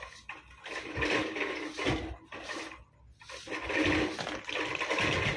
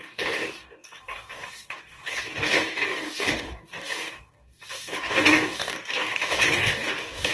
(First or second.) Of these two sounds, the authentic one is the first